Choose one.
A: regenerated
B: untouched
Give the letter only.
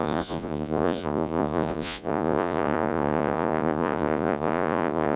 A